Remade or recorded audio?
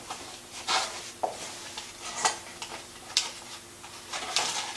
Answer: recorded